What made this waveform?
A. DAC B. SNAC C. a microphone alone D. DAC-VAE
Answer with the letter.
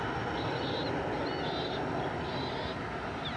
C